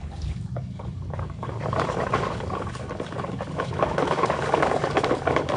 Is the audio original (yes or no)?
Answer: no